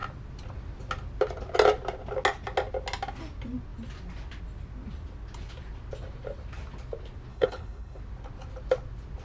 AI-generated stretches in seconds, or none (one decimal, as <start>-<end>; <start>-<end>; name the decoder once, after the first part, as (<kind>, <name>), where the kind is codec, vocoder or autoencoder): 7.3-8.0 (codec, HILCodec)